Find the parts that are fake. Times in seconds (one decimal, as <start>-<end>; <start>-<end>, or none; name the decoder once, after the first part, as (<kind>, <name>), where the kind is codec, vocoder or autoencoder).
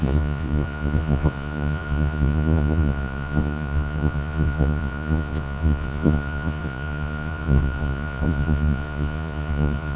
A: 0.0-10.0 (vocoder, Vocos)